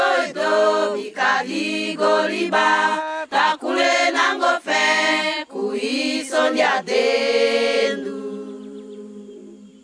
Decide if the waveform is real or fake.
real